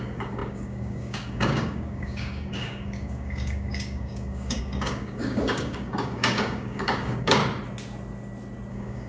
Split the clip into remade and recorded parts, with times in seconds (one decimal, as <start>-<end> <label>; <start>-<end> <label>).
0.0-7.4 remade; 7.4-8.7 recorded; 8.7-9.1 remade